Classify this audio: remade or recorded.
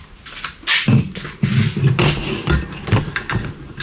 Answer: recorded